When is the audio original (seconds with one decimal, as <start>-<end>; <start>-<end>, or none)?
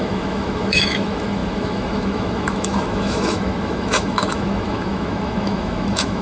none